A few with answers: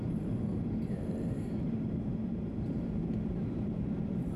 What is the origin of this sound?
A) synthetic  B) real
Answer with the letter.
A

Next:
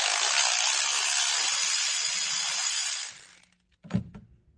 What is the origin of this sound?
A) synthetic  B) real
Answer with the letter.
B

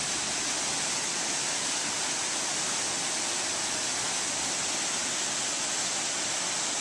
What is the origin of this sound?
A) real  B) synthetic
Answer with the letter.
A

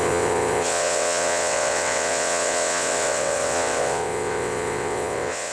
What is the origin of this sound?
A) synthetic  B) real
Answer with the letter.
A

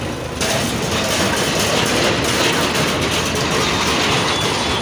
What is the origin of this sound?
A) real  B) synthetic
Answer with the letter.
A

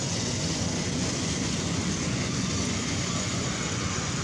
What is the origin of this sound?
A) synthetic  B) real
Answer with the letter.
A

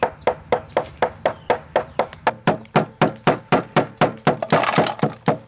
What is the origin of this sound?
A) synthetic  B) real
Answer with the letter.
B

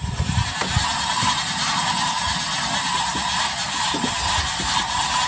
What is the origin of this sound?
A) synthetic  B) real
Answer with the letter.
B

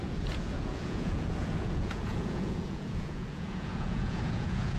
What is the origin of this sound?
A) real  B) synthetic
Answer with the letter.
B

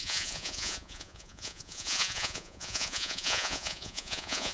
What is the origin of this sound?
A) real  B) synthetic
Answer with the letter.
B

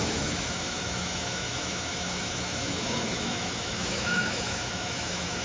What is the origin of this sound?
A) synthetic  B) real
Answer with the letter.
A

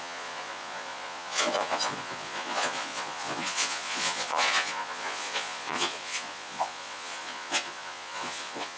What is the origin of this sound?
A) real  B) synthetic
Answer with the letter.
B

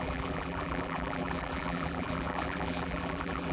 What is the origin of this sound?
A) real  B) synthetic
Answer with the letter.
B